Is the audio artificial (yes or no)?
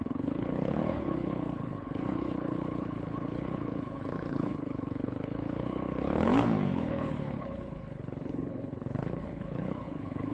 yes